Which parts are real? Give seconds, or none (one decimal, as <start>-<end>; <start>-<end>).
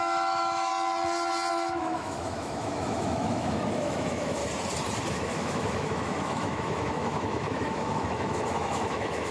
0.7-1.5; 4.4-5.1